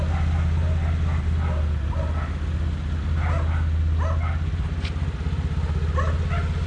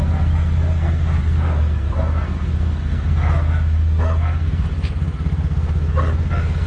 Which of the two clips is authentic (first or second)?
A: first